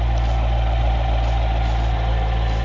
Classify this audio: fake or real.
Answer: real